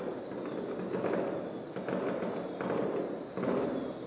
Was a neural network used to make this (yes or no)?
no